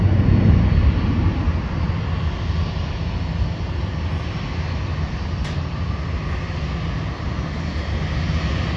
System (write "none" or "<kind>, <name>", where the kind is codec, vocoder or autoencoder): none